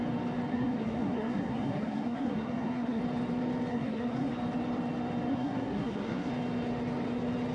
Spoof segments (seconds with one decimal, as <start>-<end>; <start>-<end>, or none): 0.5-3.0; 3.7-4.3; 5.3-6.3